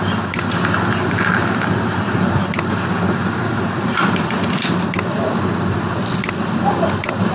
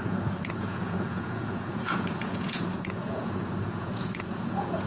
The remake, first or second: second